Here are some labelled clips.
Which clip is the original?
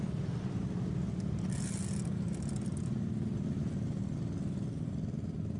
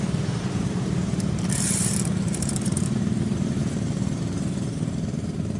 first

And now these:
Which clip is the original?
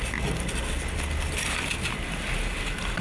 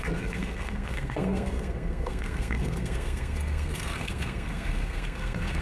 first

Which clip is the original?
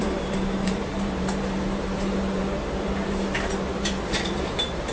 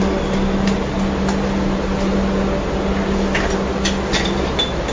second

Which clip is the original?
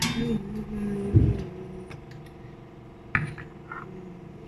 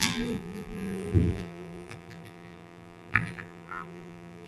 first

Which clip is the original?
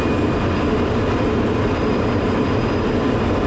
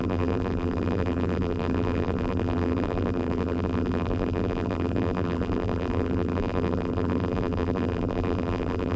first